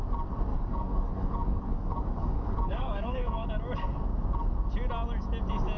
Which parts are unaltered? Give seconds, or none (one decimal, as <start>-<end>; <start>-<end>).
0.0-0.5; 3.5-5.8